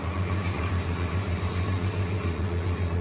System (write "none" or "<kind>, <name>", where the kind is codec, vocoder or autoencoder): vocoder, Vocos